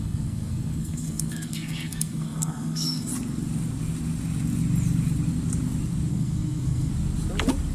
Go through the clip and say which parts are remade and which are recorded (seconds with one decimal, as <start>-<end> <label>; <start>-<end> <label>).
0.0-3.1 remade; 3.1-6.1 recorded; 6.1-6.9 remade; 6.9-7.7 recorded